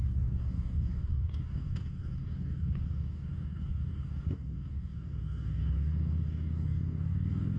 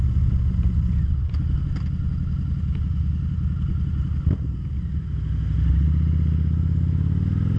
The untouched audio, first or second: second